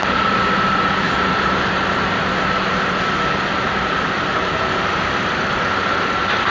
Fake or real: real